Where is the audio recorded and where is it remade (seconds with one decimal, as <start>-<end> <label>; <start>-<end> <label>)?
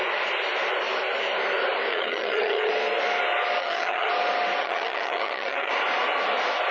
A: 0.0-1.9 recorded; 1.9-2.7 remade; 2.7-3.6 recorded; 3.6-4.1 remade; 4.1-4.6 recorded; 4.6-5.7 remade; 5.7-6.7 recorded